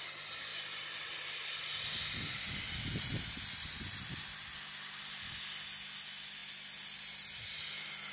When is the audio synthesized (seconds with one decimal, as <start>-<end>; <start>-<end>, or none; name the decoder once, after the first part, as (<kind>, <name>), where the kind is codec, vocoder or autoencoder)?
none